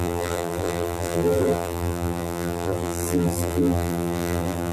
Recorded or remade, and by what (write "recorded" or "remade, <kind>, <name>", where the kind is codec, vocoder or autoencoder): remade, vocoder, BigVGAN v2